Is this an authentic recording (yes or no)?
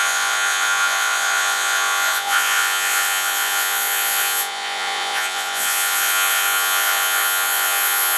no